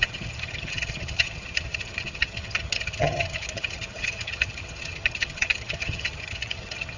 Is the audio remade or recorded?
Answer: remade